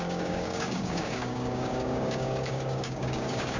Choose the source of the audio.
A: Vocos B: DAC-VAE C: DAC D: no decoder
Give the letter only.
C